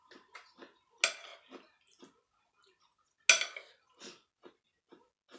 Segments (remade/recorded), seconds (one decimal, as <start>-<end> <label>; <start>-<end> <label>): 0.0-5.4 recorded